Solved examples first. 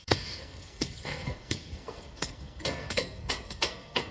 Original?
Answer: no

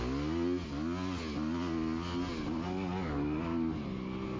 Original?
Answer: yes